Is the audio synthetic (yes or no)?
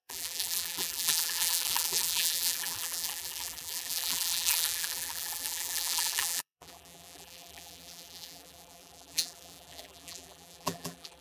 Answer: yes